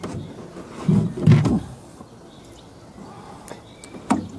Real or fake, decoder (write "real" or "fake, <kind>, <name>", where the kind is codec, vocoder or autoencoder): real